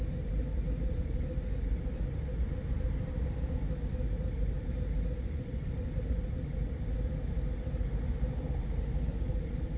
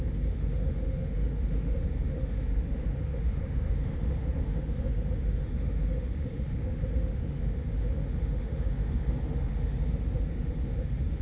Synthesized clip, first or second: second